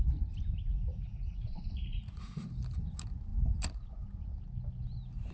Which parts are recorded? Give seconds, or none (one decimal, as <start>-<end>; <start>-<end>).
0.0-0.6; 2.5-5.3